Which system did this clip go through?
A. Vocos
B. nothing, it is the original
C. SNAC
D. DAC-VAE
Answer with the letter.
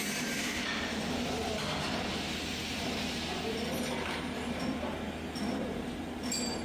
B